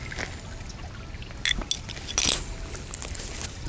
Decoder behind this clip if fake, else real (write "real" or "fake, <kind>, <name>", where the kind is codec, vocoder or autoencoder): real